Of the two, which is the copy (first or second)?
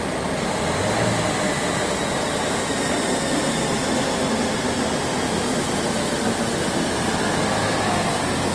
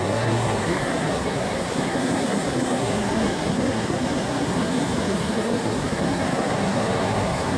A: second